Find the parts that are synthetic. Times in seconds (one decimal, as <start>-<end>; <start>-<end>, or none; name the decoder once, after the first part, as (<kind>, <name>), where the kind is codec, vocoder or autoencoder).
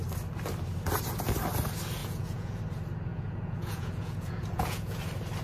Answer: 2.0-2.6 (vocoder, Vocos); 3.1-5.0